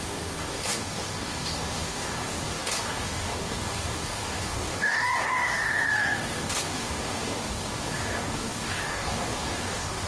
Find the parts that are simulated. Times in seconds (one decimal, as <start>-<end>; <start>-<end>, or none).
0.0-10.1